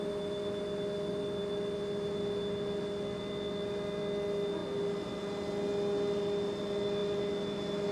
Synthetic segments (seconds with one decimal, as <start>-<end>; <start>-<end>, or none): none